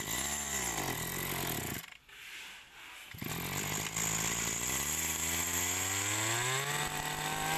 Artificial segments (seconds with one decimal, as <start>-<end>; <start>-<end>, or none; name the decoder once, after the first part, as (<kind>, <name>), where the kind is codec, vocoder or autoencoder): none